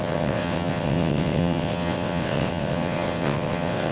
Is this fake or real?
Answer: fake